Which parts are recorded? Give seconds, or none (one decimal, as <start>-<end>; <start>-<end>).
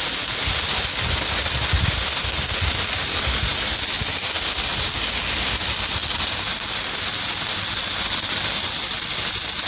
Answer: 0.0-9.7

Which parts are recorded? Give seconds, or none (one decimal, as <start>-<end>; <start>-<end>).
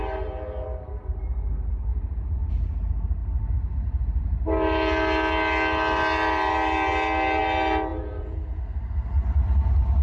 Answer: 0.0-1.9; 2.4-7.9; 8.6-10.0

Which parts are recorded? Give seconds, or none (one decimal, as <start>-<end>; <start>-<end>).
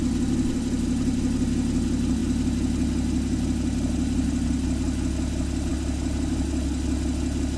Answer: 0.0-7.6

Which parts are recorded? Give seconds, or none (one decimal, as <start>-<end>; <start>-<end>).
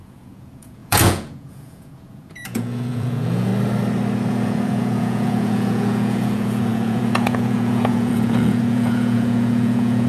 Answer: 3.5-4.3